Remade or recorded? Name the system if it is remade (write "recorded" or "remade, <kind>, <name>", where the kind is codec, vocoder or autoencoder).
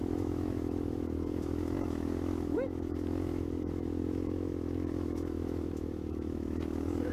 remade, autoencoder, DAC-VAE